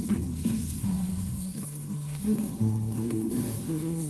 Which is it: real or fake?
fake